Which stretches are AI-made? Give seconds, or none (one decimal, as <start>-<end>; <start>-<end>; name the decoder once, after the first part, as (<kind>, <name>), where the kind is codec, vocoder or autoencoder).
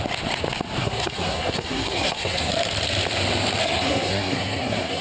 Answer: 0.8-2.5 (codec, SNAC); 3.6-5.0